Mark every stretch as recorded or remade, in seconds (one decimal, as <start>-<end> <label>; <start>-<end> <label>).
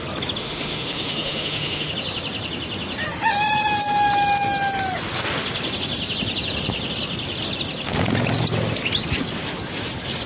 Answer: 0.0-0.4 recorded; 0.4-1.9 remade; 1.9-10.3 recorded